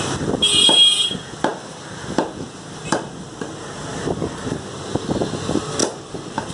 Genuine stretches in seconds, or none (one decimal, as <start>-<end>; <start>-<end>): 0.0-6.5